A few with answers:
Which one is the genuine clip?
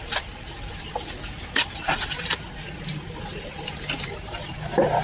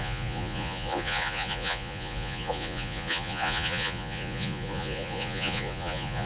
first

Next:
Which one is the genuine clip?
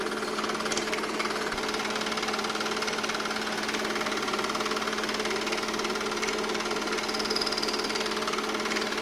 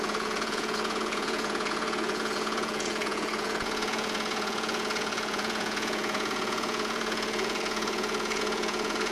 first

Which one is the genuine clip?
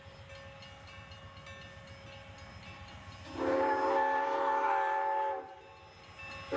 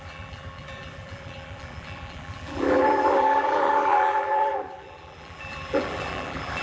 first